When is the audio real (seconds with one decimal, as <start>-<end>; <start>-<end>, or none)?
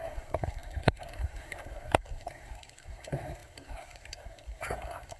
none